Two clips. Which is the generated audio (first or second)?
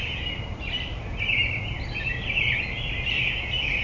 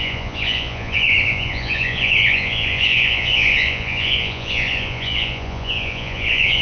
second